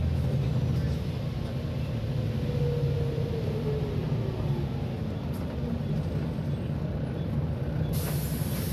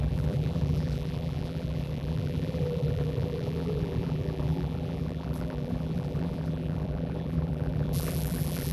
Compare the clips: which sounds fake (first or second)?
second